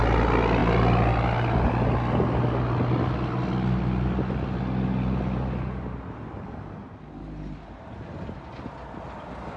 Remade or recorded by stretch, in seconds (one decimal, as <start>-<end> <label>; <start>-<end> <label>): 0.0-9.6 recorded